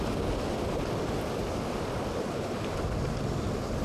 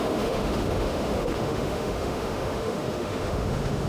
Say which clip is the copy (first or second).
second